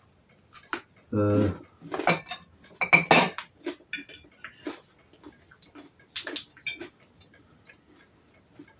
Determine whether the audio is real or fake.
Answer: real